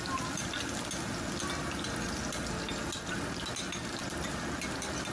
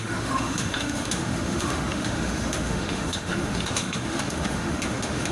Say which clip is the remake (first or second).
second